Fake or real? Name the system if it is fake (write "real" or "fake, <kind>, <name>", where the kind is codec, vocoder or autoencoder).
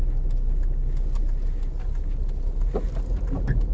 real